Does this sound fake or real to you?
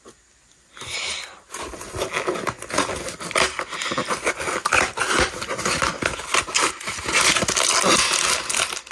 real